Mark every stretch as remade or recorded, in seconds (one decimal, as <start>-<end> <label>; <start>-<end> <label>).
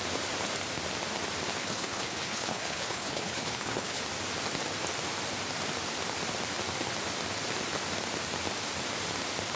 0.0-1.6 recorded; 1.6-4.0 remade; 4.0-9.6 recorded